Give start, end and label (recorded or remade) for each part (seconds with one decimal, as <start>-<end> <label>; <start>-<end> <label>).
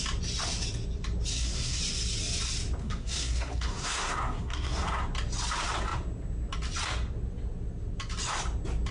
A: 0.0-1.3 recorded; 1.3-1.8 remade; 1.8-2.8 recorded; 2.8-5.0 remade; 5.0-8.9 recorded